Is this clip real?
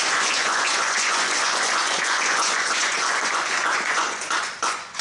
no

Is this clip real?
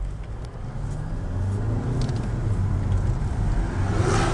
yes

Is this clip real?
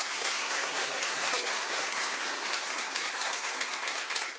no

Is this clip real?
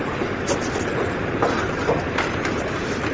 yes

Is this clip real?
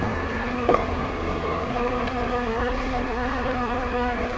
no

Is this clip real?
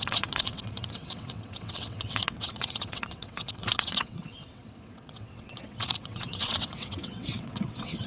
no